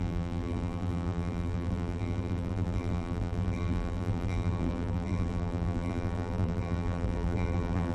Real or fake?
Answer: fake